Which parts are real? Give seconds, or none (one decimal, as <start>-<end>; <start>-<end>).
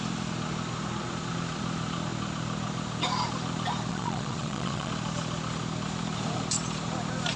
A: 0.0-3.9; 4.9-7.4